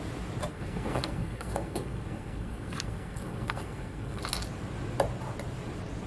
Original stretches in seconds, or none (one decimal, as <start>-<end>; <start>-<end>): 0.0-0.5; 4.2-6.1